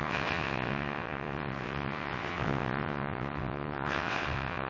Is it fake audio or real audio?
fake